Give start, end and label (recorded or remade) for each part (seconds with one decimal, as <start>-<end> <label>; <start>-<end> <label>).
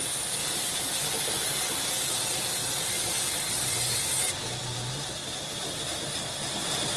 0.0-0.4 recorded; 0.4-1.1 remade; 1.1-2.6 recorded; 2.6-4.6 remade; 4.6-5.2 recorded; 5.2-6.0 remade; 6.0-7.0 recorded